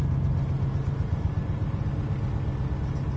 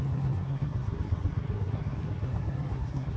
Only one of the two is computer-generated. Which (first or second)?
second